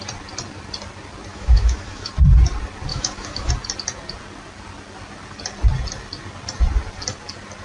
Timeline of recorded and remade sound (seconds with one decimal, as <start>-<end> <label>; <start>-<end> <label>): 0.0-1.3 recorded; 1.3-2.1 remade; 2.1-2.9 recorded; 2.9-3.5 remade; 3.5-7.6 recorded